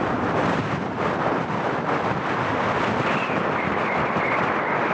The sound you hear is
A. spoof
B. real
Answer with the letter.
B